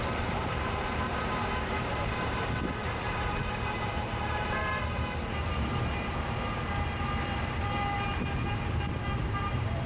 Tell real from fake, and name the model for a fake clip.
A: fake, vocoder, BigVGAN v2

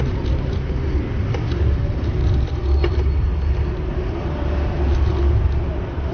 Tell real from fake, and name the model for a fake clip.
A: real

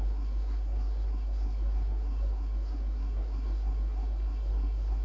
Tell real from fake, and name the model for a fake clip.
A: fake, codec, SNAC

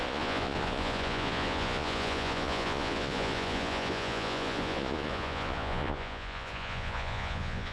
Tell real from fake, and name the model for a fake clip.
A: fake, vocoder, Vocos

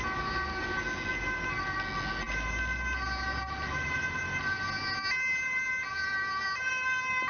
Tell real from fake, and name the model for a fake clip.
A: real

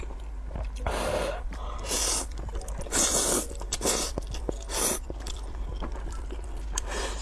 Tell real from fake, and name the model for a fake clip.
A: real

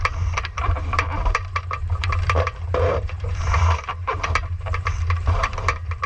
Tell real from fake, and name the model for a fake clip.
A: fake, vocoder, BigVGAN v2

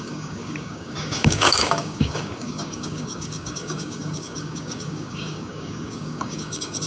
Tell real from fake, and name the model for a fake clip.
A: fake, codec, DAC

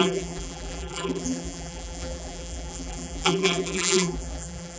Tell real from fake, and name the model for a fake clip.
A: fake, vocoder, BigVGAN v2